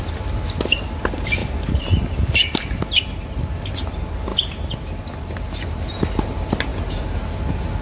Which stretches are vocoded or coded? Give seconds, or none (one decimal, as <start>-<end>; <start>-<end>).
1.4-2.8